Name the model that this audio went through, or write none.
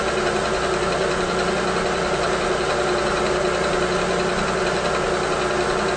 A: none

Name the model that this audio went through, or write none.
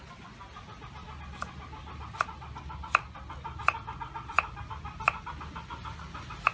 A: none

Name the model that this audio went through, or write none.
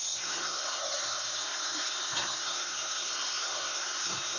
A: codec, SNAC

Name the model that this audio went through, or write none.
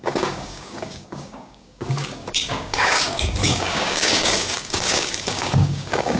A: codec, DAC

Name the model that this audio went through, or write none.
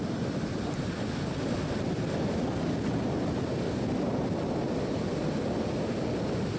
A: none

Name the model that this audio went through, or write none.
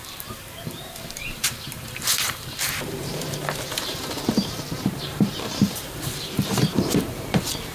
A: vocoder, BigVGAN v2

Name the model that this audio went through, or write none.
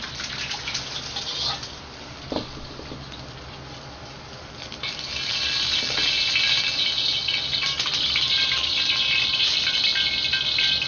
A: none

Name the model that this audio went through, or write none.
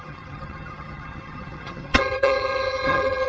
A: vocoder, HiFi-GAN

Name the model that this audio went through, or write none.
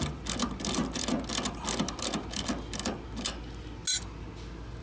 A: none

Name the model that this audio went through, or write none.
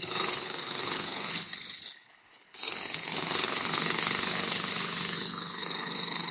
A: codec, HILCodec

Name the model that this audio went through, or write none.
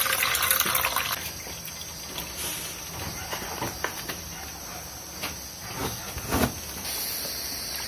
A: none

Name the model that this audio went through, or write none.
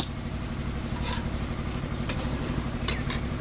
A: vocoder, BigVGAN v2